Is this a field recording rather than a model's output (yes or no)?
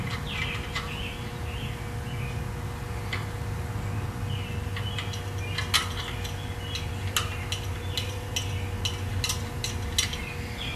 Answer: yes